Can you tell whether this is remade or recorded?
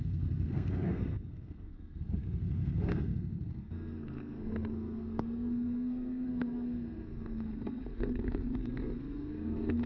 remade